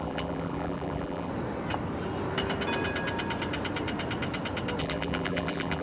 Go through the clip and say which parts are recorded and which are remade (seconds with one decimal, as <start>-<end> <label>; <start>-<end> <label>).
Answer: 0.0-1.3 remade; 1.3-4.8 recorded; 4.8-5.8 remade